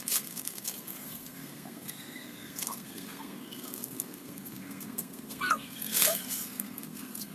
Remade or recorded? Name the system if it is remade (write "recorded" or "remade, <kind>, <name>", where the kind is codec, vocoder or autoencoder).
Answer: remade, codec, SNAC